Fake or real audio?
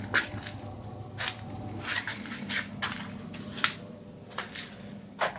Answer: real